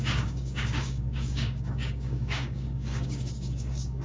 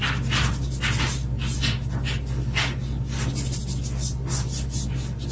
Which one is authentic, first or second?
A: second